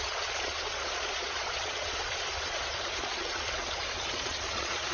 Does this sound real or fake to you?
fake